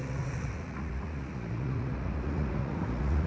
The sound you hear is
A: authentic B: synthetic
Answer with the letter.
B